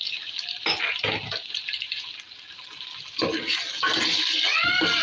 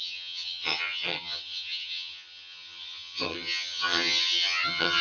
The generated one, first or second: second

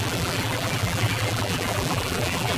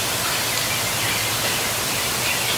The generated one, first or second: first